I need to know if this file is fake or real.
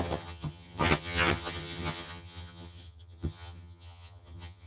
fake